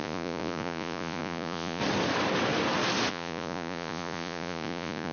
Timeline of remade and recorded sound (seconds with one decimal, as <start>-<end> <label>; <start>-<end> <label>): 0.0-1.8 remade; 1.8-3.1 recorded; 3.1-5.1 remade